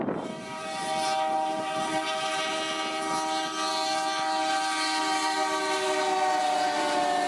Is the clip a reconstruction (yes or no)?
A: no